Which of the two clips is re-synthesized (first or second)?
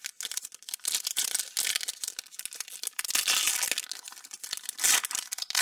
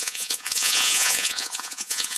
second